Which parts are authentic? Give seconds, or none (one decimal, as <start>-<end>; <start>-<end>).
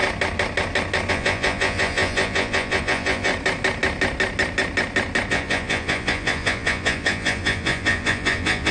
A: 0.0-1.1; 3.3-5.3